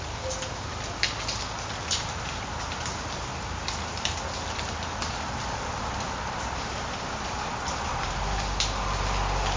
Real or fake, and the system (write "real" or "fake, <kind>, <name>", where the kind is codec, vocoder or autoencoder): real